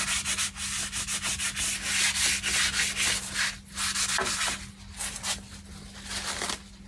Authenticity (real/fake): real